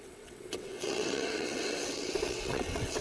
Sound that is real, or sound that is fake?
fake